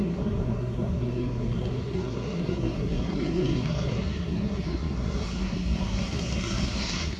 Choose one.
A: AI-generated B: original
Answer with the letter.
A